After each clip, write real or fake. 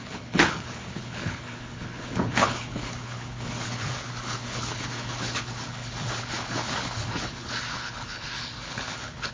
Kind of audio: fake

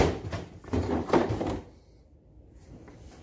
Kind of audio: real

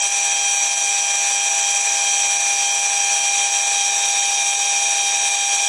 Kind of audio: real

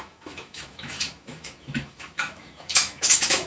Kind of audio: fake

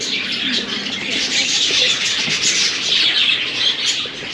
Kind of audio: real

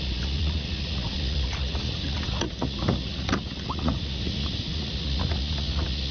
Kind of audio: fake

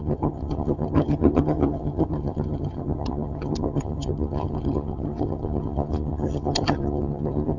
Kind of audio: fake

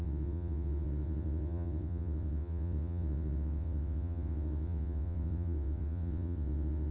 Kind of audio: fake